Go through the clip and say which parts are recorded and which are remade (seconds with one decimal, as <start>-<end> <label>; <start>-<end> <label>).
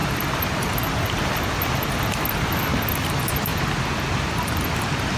0.0-3.1 remade; 3.1-5.2 recorded